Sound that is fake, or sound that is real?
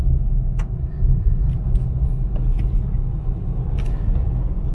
real